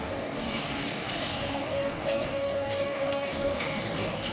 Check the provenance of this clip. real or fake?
fake